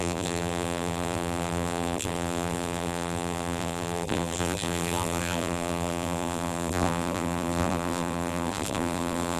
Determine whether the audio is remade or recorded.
remade